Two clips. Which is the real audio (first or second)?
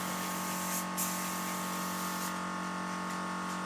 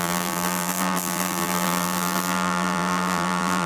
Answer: first